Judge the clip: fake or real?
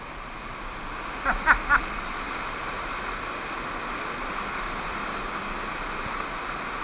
real